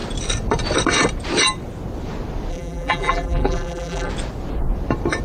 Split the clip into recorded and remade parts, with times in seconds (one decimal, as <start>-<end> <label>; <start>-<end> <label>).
0.0-2.5 recorded; 2.5-4.1 remade; 4.1-5.2 recorded